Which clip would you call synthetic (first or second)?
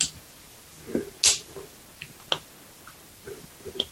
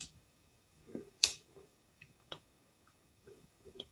second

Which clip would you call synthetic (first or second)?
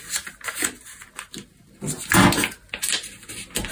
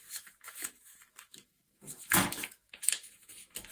second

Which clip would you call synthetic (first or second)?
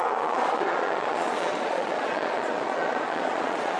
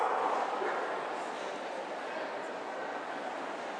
first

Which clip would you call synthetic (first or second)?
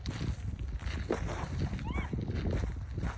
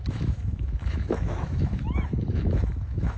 second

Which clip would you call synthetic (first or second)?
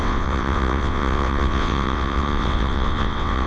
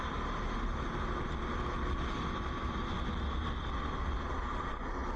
first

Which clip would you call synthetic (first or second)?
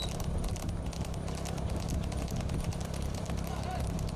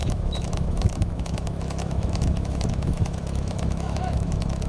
second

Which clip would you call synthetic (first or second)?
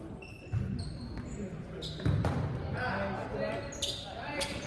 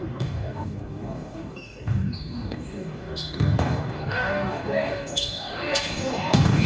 second